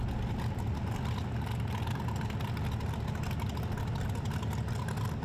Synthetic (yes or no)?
no